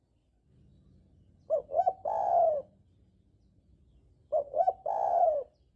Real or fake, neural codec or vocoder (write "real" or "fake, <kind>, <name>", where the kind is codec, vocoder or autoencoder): real